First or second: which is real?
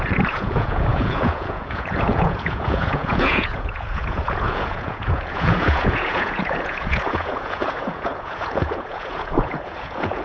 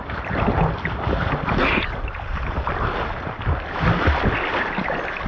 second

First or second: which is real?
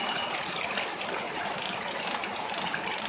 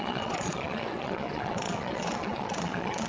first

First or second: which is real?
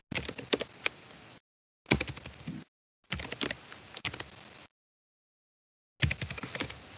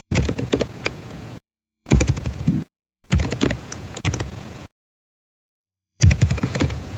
first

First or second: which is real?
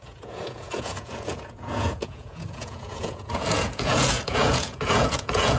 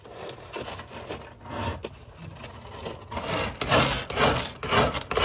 second